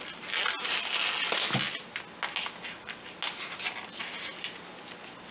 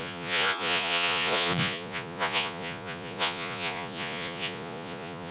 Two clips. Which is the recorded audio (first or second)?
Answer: first